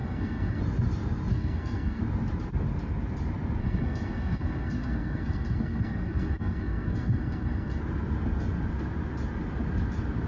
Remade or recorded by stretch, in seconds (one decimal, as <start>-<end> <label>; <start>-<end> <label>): 0.0-0.6 remade; 0.6-1.3 recorded; 1.3-2.0 remade; 2.0-3.6 recorded; 3.6-7.8 remade; 7.8-10.3 recorded